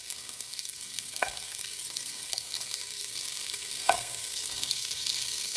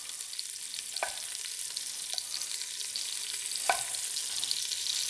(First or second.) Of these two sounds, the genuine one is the second